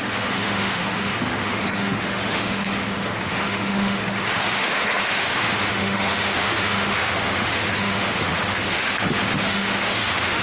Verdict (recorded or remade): remade